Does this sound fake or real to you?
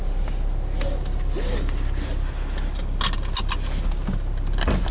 real